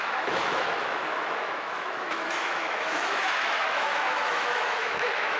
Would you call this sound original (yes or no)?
no